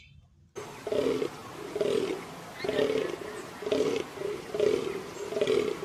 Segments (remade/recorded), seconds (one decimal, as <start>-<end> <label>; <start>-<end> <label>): 0.0-5.8 recorded